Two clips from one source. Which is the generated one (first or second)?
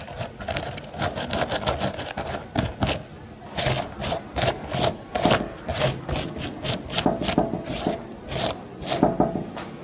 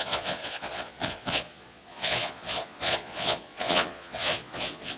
second